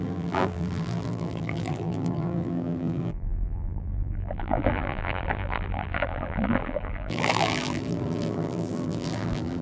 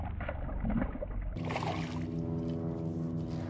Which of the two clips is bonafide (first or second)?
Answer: second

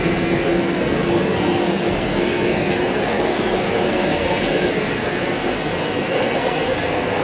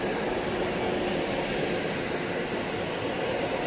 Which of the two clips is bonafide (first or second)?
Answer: second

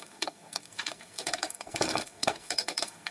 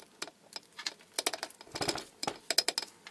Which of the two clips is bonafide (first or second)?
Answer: second